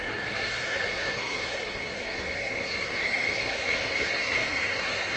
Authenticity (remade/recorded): remade